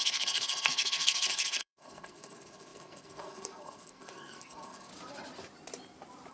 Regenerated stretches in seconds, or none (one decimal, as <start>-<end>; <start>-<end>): 0.0-4.9